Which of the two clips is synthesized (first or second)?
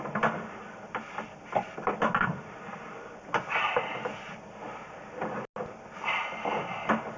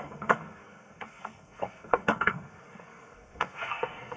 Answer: second